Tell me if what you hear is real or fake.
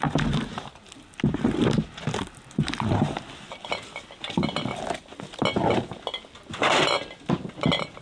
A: real